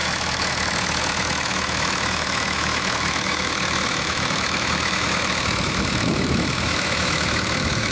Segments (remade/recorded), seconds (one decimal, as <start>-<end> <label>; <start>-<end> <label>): 0.0-7.9 remade